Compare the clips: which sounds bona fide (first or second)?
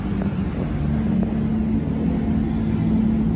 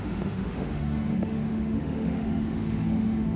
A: first